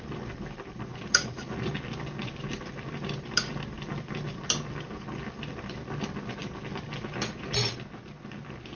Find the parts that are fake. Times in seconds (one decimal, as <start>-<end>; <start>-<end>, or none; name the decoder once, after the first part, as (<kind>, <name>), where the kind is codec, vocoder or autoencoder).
0.9-1.5 (vocoder, BigVGAN v2)